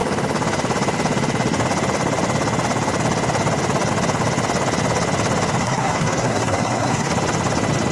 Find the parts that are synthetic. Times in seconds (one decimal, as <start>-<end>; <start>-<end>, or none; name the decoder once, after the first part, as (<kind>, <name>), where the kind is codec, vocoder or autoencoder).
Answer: 5.6-7.1 (codec, SNAC)